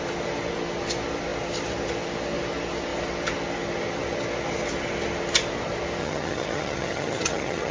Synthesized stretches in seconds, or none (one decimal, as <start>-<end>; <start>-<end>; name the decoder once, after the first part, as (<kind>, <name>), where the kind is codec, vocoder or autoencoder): 6.0-7.7 (vocoder, HiFi-GAN)